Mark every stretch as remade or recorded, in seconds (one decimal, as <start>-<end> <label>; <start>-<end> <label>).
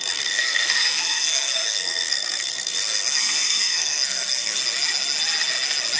0.0-4.6 remade; 4.6-6.0 recorded